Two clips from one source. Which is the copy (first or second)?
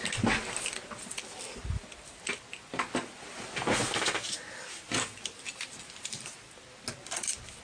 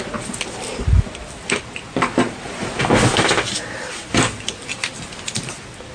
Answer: second